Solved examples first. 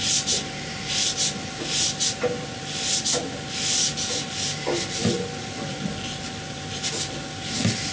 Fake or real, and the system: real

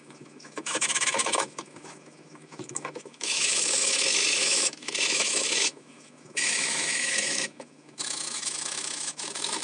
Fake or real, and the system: fake, autoencoder, DAC-VAE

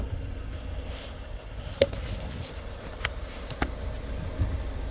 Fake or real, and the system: real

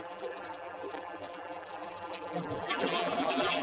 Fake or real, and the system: fake, vocoder, BigVGAN v2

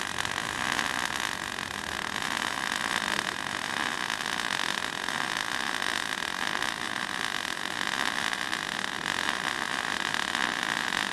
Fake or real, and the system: real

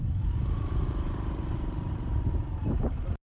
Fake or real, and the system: real